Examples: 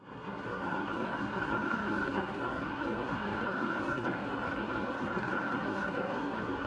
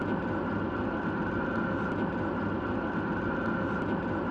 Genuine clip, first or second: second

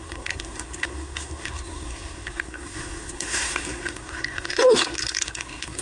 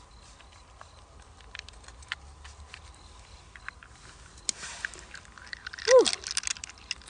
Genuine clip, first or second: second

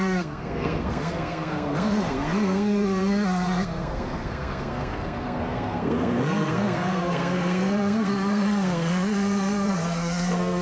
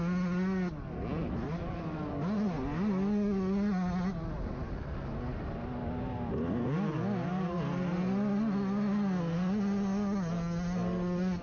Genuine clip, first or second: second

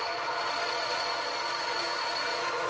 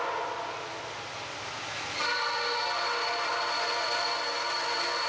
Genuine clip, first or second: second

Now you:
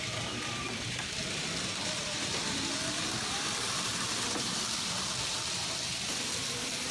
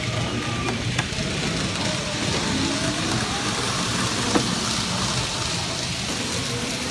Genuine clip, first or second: second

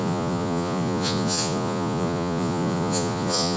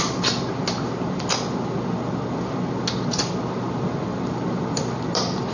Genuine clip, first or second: second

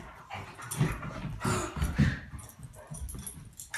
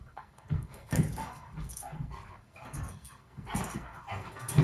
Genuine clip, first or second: first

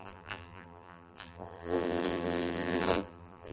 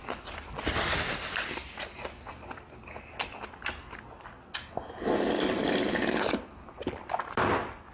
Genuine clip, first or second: second